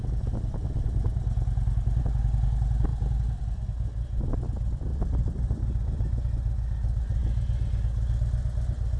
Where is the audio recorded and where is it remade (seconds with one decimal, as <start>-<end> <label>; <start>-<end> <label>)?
0.0-4.9 recorded; 4.9-6.3 remade; 6.3-9.0 recorded